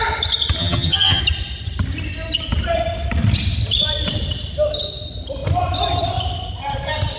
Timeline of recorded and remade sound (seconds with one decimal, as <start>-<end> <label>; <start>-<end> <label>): 0.0-0.6 recorded; 0.6-1.2 remade; 1.2-7.2 recorded

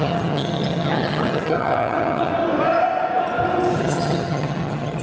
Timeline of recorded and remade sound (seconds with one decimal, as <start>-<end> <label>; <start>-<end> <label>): 0.0-2.3 remade; 2.3-3.8 recorded; 3.8-5.0 remade

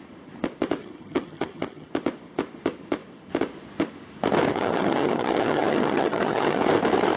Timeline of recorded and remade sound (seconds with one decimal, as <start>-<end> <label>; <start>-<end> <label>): 0.0-0.8 recorded; 0.8-1.9 remade; 1.9-4.5 recorded; 4.5-6.6 remade; 6.6-7.2 recorded

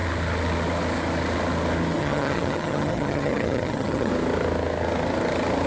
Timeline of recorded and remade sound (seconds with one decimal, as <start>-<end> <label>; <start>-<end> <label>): 0.0-2.0 recorded; 2.0-4.1 remade; 4.1-5.7 recorded

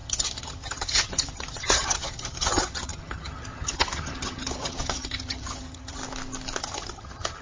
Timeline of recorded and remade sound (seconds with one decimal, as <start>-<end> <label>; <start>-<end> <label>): 0.0-6.0 remade; 6.0-6.6 recorded; 6.6-7.4 remade